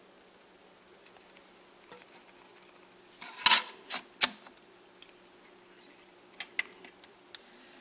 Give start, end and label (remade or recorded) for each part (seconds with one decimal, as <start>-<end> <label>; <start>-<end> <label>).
0.0-7.8 recorded